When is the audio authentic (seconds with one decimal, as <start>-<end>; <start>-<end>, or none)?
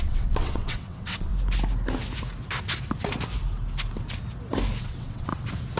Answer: 1.3-4.8; 5.3-5.8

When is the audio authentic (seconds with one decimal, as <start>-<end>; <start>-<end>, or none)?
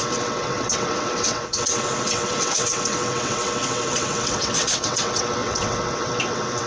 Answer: none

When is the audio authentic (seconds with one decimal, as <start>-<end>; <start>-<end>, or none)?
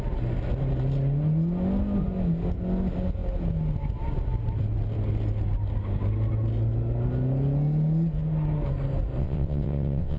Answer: 0.0-9.2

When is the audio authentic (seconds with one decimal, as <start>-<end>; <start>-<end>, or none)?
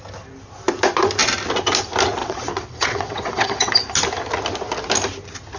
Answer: 0.0-2.2; 3.7-5.6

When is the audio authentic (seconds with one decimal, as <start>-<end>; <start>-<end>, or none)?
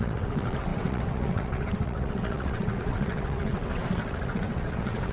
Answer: none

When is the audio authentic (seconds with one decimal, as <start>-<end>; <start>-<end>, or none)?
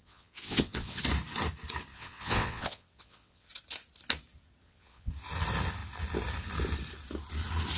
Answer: 1.0-1.9; 3.5-4.6; 5.1-7.8